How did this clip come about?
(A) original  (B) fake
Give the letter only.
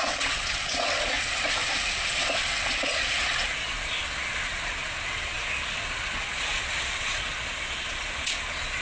B